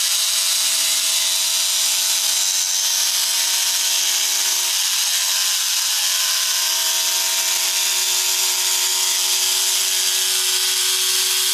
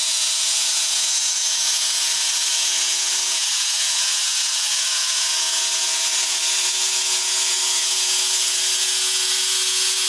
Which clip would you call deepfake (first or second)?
second